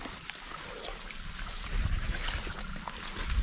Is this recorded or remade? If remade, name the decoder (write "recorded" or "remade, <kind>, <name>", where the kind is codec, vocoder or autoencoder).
recorded